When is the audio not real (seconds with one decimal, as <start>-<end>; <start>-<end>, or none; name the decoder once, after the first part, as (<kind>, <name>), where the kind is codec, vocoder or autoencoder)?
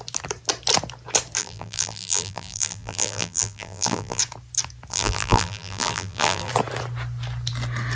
1.4-4.2 (vocoder, BigVGAN v2); 4.9-6.5